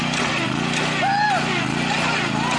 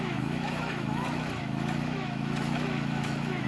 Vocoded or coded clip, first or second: second